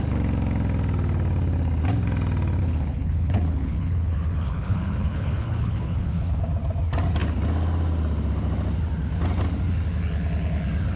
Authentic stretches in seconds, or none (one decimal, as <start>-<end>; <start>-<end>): 0.0-2.6; 6.4-11.0